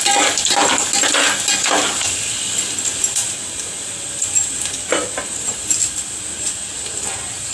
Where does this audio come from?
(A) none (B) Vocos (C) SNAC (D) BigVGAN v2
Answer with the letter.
A